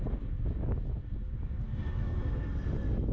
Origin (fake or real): real